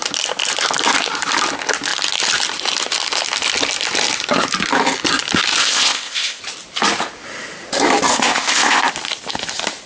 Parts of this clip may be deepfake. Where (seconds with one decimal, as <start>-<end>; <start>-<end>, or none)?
5.6-6.4; 8.1-8.8